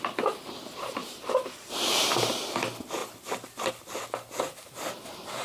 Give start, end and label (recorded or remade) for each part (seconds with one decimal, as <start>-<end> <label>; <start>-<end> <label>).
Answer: 0.0-1.0 recorded; 1.0-2.1 remade; 2.1-5.4 recorded